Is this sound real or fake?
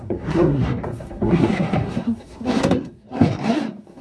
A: fake